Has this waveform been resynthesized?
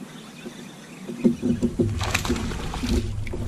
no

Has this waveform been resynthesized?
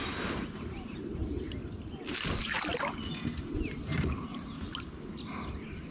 no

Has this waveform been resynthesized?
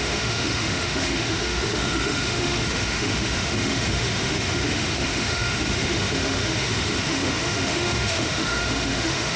yes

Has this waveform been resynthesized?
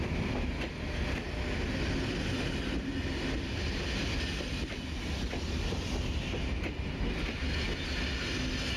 no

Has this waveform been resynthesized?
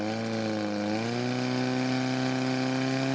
no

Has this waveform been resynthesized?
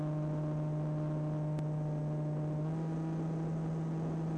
no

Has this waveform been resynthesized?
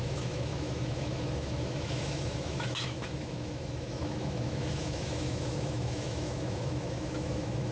yes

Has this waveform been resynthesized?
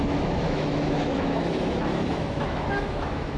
yes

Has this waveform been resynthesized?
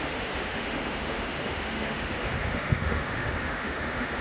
yes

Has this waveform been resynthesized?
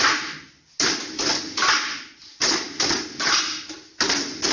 no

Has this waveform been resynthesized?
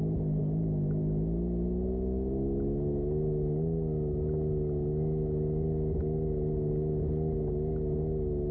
no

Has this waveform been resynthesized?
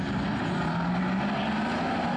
no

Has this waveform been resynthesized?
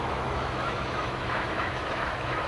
yes